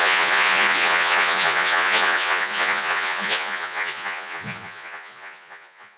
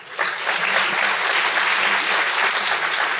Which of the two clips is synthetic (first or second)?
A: first